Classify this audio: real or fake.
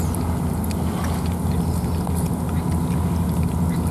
real